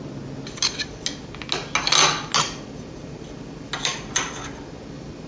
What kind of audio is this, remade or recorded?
recorded